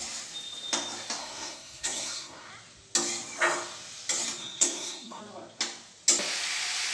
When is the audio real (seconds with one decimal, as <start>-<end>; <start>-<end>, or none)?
0.0-1.2; 2.5-4.4; 5.2-6.9